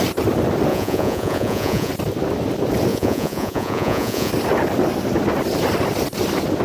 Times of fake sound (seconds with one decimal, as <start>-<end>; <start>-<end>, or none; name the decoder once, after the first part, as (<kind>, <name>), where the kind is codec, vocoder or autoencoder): 0.7-1.9 (vocoder, Vocos); 2.9-4.3